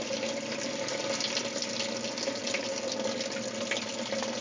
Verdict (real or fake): real